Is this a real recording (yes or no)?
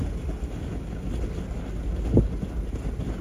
yes